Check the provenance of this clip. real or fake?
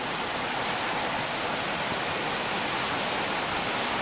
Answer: real